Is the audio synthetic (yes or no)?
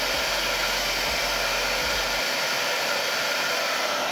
no